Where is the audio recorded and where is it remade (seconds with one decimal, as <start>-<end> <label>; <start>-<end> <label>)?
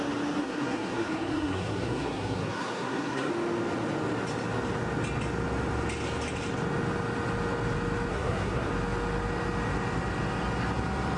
0.0-0.4 recorded; 0.4-3.3 remade; 3.3-8.1 recorded; 8.1-8.7 remade; 8.7-11.2 recorded